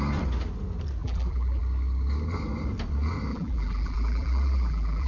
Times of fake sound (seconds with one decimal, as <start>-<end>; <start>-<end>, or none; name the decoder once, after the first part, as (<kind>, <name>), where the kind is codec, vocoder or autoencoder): 1.0-1.6 (vocoder, BigVGAN v2); 3.3-5.1